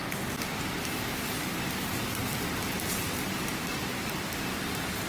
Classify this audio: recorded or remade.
recorded